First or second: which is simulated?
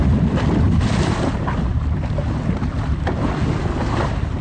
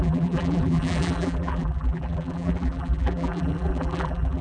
second